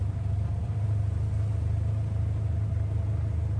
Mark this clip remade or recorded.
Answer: recorded